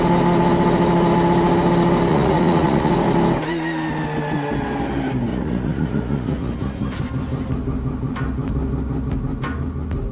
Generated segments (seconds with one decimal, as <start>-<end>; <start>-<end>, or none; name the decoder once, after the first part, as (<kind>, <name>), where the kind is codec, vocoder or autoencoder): 2.1-2.9 (vocoder, Vocos); 5.3-7.0